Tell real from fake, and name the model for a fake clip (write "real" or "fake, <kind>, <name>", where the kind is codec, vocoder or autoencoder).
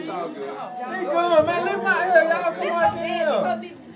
real